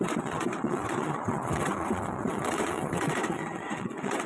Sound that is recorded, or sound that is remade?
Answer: remade